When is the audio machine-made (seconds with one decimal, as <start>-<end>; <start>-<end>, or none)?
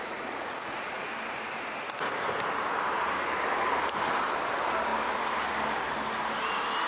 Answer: 0.0-1.0